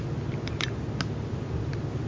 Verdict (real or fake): real